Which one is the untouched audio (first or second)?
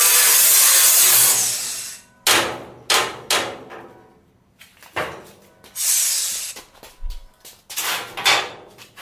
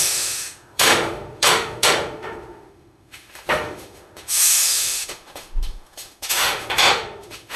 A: first